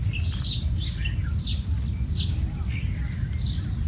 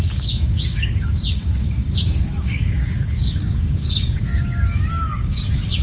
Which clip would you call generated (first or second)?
second